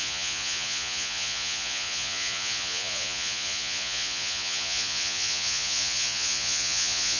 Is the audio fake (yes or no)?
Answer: yes